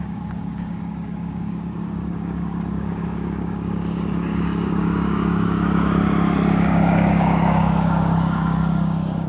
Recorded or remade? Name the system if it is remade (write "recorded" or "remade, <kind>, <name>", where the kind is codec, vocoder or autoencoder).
remade, codec, DAC